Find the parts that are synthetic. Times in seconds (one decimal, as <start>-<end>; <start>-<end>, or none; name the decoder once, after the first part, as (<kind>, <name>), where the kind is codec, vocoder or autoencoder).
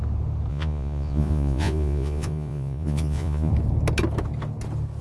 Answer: 0.5-3.5 (vocoder, Vocos)